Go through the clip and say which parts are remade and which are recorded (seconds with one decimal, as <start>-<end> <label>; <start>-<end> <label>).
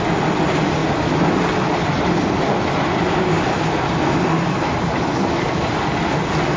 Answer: 0.0-6.6 recorded